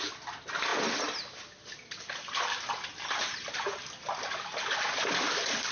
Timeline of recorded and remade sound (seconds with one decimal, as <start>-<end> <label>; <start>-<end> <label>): 0.0-5.7 recorded